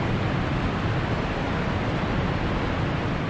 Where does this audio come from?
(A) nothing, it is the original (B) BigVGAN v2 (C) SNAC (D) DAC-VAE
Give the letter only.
A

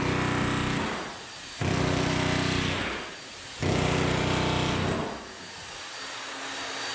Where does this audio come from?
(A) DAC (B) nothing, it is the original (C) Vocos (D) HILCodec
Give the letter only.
B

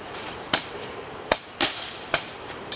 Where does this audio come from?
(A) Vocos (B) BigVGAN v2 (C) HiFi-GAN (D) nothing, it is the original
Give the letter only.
B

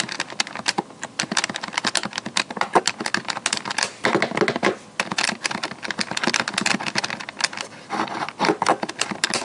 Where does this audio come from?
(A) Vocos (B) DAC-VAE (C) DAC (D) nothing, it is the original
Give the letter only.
D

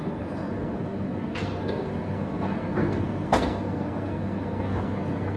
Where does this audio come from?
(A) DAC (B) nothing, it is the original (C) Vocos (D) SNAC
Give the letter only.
D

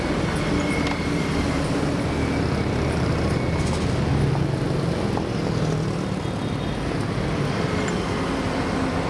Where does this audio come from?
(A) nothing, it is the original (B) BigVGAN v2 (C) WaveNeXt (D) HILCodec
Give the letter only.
A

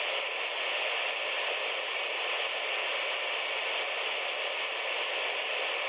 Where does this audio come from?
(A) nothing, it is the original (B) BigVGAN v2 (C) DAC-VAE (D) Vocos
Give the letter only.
A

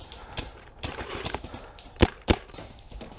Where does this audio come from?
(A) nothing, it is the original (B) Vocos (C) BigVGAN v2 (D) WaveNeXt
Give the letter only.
C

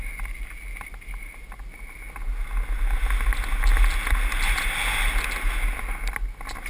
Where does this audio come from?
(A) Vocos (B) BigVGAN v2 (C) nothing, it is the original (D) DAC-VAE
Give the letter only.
C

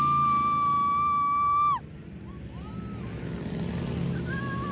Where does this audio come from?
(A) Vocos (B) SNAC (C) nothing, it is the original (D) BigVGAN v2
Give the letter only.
C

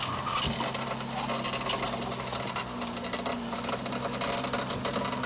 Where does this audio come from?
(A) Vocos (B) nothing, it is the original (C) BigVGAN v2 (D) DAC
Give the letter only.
B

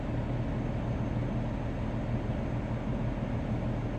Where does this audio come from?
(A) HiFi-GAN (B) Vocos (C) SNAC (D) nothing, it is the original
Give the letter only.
D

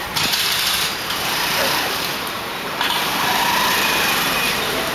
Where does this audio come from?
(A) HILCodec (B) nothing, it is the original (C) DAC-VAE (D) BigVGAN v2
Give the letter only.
D